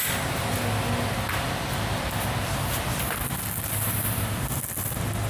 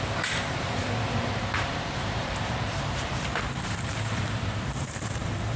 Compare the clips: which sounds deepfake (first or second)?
second